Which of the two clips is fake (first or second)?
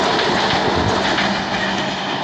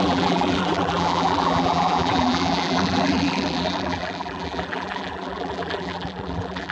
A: second